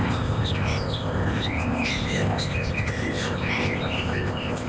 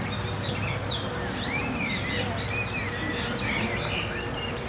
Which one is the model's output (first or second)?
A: first